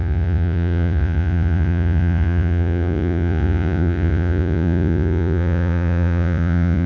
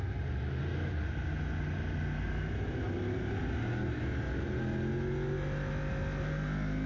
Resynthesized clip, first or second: first